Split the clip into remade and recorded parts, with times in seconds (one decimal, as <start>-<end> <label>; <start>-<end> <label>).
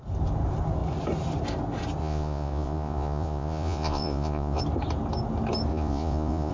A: 0.0-2.0 recorded; 2.0-4.6 remade; 4.6-5.7 recorded; 5.7-6.5 remade